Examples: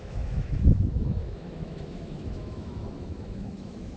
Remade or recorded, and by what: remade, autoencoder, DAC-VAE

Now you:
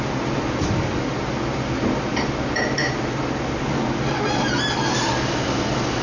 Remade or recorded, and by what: recorded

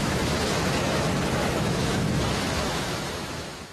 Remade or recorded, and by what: remade, autoencoder, DAC-VAE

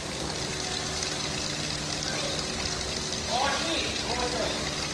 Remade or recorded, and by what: recorded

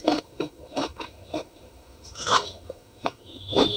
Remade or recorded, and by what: remade, autoencoder, DAC-VAE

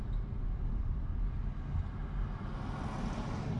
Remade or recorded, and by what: recorded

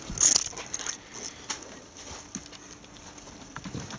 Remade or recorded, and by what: recorded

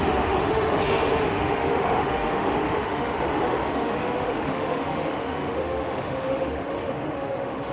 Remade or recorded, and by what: remade, autoencoder, DAC-VAE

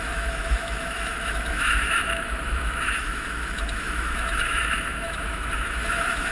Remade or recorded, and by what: remade, autoencoder, DAC-VAE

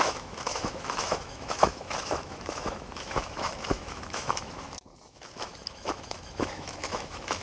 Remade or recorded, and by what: remade, autoencoder, DAC-VAE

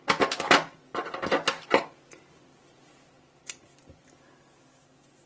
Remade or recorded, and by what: recorded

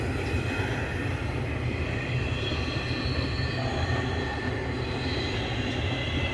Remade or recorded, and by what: recorded